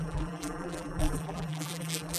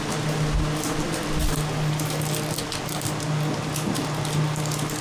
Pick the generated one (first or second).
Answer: first